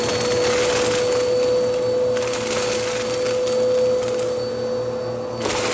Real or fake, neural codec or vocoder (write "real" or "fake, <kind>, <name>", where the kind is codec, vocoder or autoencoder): real